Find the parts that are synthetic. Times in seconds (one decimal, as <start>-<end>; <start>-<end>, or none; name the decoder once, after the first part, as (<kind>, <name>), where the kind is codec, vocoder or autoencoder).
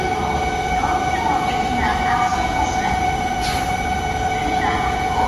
2.3-3.0 (vocoder, Vocos); 4.4-5.3